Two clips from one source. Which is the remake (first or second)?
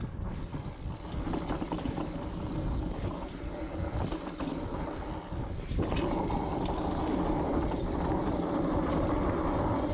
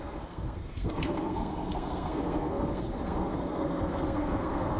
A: second